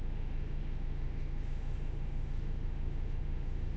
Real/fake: fake